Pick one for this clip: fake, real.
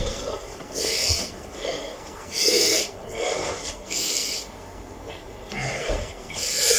fake